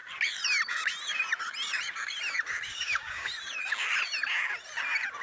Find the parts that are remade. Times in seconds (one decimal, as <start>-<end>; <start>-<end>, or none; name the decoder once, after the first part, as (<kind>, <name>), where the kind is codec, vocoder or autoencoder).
2.7-3.3 (codec, DAC)